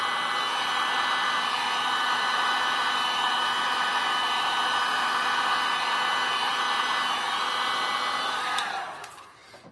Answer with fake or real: real